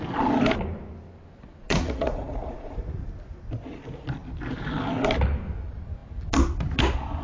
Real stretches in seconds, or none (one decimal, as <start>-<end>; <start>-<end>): 0.0-1.6; 2.8-7.2